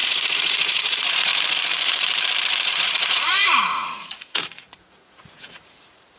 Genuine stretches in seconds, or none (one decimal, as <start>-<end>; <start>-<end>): 1.3-2.7